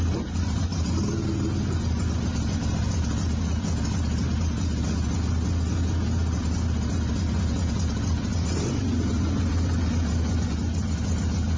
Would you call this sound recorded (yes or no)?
yes